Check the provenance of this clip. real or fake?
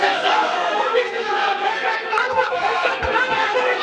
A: fake